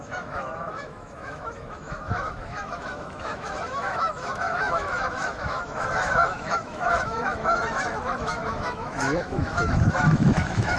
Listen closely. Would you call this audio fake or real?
fake